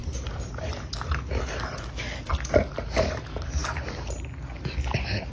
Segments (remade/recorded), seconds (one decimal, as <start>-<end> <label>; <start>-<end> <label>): 0.0-5.3 recorded